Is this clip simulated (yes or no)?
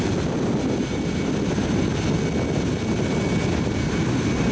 no